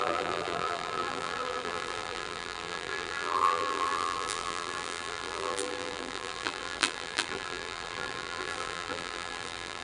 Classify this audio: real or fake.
fake